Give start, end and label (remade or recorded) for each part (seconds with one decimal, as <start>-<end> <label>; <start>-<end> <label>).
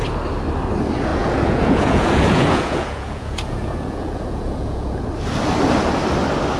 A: 0.0-1.1 recorded; 1.1-5.1 remade; 5.1-6.6 recorded